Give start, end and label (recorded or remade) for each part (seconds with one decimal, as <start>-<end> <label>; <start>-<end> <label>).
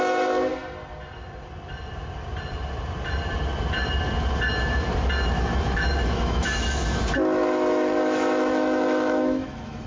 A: 0.0-0.5 remade; 0.5-5.3 recorded; 5.3-9.9 remade